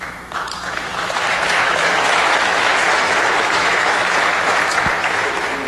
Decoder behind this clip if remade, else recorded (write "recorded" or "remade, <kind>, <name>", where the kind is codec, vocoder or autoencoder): remade, autoencoder, DAC-VAE